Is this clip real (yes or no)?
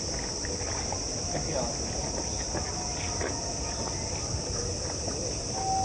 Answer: yes